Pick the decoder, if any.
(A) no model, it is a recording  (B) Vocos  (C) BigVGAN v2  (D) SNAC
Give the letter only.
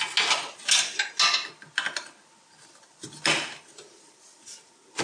A